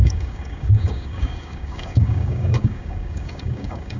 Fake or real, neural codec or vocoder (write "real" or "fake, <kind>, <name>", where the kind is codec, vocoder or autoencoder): fake, codec, DAC